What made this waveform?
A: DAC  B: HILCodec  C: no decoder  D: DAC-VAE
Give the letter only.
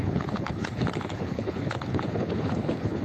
B